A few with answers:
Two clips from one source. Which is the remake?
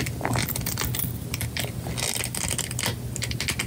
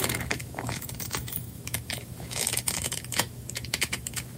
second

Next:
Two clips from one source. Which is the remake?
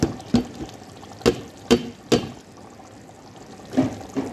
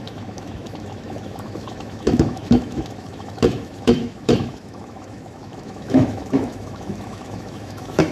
second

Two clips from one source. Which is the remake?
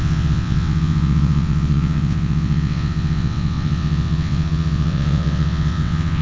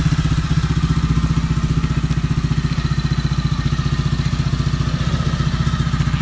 first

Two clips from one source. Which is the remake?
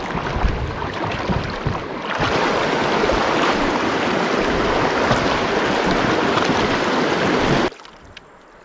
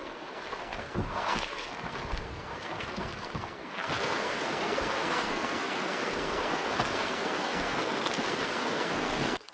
second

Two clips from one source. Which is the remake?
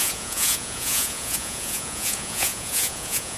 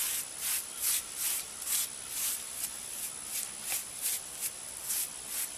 first